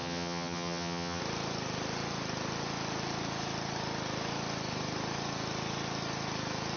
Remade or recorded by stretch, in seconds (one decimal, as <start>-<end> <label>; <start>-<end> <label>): 0.0-1.2 remade; 1.2-6.8 recorded